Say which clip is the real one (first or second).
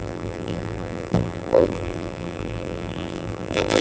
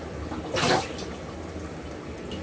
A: second